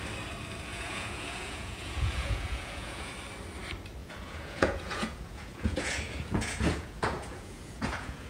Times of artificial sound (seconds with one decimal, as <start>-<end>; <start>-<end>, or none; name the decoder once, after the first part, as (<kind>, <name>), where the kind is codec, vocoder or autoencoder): 0.7-3.1 (vocoder, Vocos); 4.0-8.3